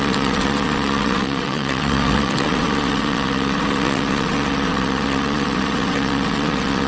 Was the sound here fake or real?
fake